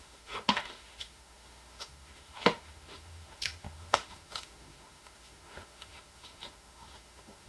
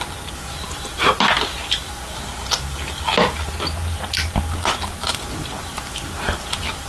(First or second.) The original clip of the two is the second